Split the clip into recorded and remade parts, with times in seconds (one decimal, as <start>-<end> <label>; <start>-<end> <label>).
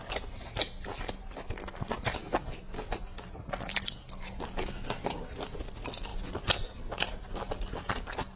0.0-8.4 recorded